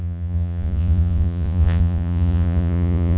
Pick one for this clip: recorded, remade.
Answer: remade